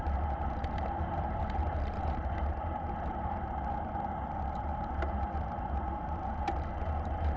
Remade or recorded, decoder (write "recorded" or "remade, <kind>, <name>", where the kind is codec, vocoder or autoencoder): remade, vocoder, BigVGAN v2